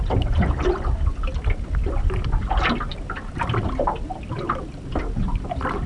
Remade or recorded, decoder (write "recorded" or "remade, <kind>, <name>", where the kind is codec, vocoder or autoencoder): recorded